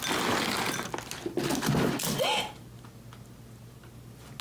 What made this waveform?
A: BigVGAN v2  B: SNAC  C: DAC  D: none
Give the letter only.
D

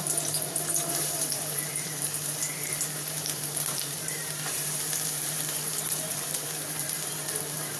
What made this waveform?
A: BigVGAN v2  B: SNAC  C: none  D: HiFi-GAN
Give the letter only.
A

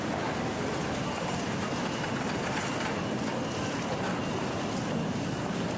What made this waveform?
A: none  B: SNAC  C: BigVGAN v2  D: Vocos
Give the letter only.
C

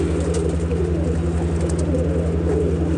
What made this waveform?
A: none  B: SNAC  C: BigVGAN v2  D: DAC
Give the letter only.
A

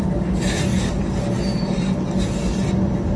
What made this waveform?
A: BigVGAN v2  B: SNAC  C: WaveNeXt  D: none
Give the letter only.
D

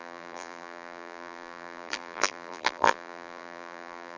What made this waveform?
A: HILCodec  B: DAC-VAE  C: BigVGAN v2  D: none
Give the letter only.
C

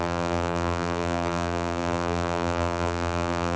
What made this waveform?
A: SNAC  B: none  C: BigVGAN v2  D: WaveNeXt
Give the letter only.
C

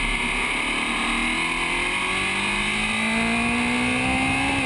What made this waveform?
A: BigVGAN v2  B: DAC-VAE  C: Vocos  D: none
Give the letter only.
D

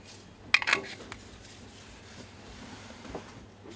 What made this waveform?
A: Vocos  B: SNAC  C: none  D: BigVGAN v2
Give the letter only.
C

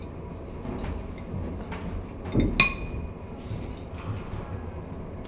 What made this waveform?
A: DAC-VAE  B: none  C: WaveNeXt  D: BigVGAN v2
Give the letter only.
B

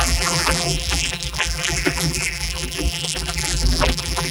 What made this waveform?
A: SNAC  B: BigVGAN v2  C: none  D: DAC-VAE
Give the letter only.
B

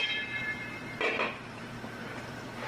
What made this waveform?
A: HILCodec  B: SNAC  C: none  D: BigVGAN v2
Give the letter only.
D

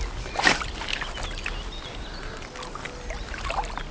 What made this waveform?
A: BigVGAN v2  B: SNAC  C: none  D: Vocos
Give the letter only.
C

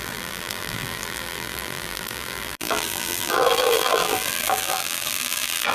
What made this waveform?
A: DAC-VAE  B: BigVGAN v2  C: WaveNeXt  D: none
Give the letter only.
B